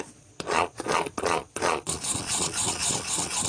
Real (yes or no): no